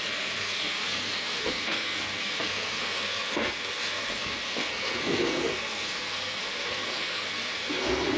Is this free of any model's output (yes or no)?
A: no